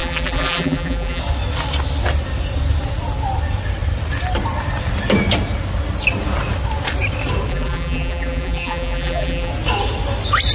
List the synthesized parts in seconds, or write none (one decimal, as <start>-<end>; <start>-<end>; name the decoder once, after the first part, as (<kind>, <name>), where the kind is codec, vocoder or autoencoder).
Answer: 0.0-1.2 (vocoder, BigVGAN v2); 7.5-9.5